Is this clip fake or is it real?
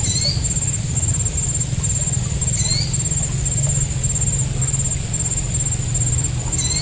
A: real